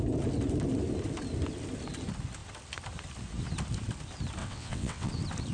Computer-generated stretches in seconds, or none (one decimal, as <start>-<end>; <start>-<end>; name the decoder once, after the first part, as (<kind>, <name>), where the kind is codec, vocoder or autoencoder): 4.4-5.1 (vocoder, WaveNeXt)